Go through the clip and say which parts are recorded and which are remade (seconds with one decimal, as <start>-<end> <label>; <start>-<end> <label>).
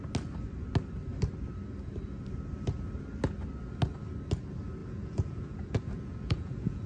0.0-4.8 recorded; 4.8-6.9 remade